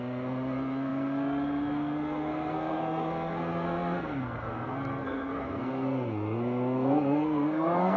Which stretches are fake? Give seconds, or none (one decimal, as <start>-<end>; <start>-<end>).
0.0-8.0